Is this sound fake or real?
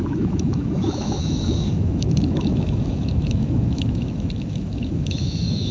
fake